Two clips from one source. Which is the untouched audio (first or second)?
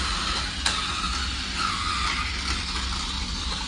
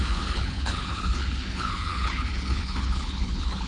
first